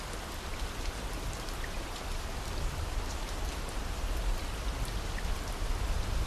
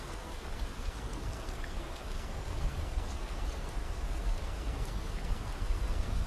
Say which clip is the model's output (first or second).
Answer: second